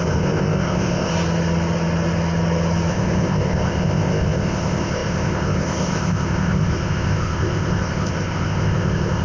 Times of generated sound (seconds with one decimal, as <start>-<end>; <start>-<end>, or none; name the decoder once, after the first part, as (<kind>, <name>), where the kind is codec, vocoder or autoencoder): 0.0-1.1 (codec, ZipCodec); 2.9-9.2